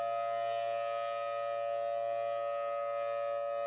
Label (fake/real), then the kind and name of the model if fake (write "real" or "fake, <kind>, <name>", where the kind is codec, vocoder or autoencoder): real